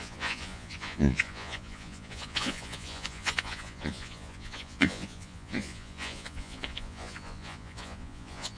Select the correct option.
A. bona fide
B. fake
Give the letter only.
B